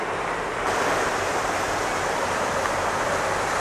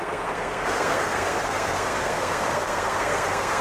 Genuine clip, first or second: first